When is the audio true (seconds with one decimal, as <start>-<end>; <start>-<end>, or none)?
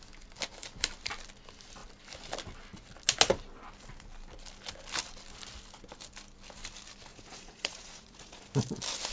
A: 0.0-7.1; 8.4-9.1